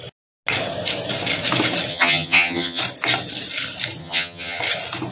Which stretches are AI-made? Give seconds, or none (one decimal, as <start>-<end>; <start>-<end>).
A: 1.9-2.8; 4.0-4.6